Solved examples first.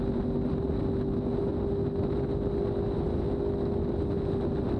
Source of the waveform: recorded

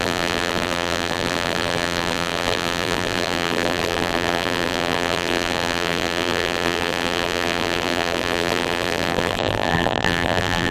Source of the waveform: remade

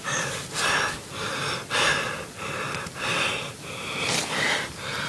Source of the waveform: recorded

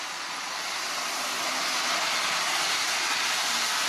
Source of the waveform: recorded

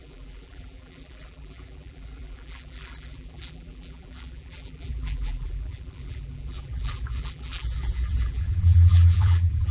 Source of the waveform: remade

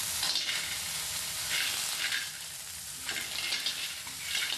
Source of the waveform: recorded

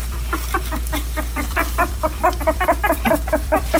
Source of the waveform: remade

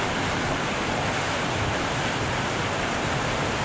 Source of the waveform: remade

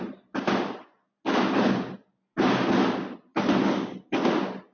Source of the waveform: recorded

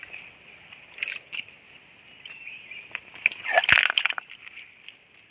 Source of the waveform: recorded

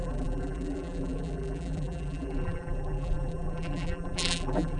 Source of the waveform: remade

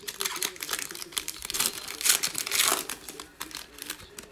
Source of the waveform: remade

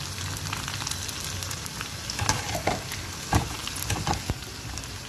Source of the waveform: recorded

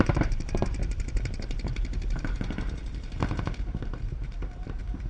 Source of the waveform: remade